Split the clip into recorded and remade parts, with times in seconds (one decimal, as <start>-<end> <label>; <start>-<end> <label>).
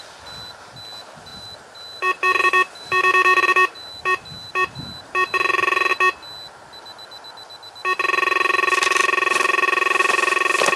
0.0-1.3 recorded; 1.3-5.9 remade; 5.9-10.8 recorded